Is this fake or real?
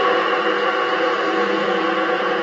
fake